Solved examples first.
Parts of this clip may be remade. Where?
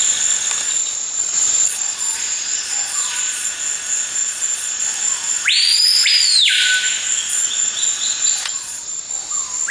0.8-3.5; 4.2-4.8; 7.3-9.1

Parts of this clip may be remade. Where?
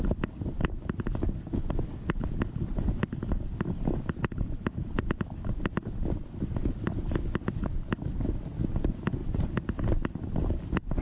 none